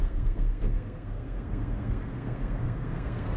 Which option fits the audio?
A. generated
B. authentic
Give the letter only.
A